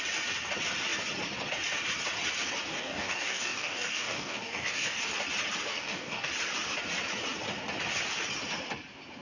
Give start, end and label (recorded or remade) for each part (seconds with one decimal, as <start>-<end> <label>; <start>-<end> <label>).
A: 0.0-2.7 recorded; 2.7-5.0 remade; 5.0-5.7 recorded; 5.7-6.3 remade; 6.3-9.2 recorded